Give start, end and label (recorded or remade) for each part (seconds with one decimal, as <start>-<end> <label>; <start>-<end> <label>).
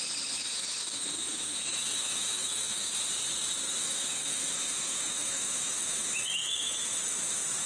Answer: 0.0-0.4 recorded; 0.4-3.0 remade; 3.0-3.8 recorded; 3.8-7.7 remade